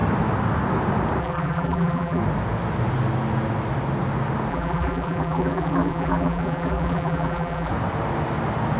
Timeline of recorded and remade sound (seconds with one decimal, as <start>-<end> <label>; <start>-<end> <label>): 0.0-1.2 recorded; 1.2-2.2 remade; 2.2-4.5 recorded; 4.5-7.7 remade; 7.7-8.8 recorded